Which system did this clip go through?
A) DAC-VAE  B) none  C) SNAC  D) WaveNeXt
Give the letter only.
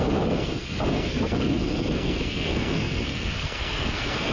C